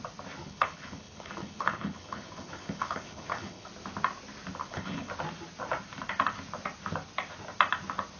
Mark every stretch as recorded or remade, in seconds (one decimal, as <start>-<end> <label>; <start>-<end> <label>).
0.0-0.4 recorded; 0.4-3.7 remade; 3.7-4.6 recorded; 4.6-5.1 remade; 5.1-8.2 recorded